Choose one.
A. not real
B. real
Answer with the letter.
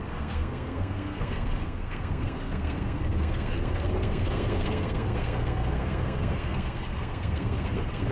A